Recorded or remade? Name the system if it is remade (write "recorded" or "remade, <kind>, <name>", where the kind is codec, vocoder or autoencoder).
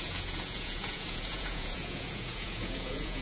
remade, vocoder, Vocos